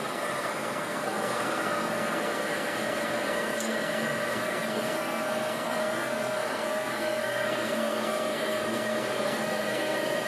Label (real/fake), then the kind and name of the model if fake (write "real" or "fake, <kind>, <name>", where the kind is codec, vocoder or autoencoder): fake, codec, SNAC